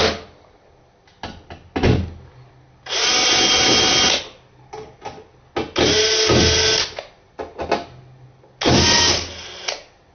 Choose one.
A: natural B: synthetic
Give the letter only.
A